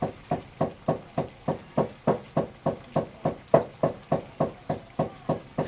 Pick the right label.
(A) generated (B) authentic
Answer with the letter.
B